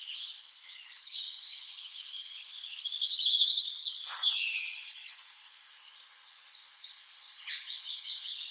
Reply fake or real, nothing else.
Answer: fake